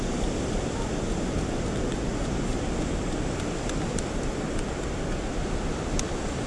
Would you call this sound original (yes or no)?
yes